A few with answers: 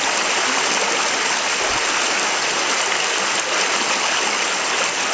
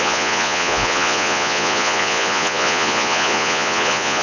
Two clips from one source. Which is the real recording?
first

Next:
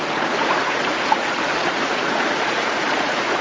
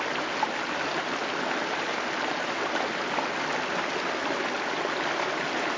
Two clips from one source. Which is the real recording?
second